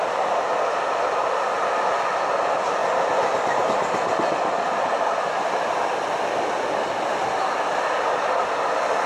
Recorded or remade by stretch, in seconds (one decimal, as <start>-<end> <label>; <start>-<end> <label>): 0.0-9.1 recorded